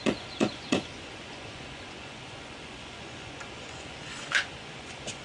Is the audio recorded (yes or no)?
no